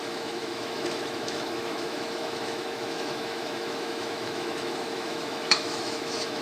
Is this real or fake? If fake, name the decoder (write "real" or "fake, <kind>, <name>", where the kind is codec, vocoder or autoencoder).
fake, autoencoder, DAC-VAE